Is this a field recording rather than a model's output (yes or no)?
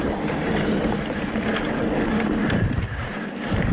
yes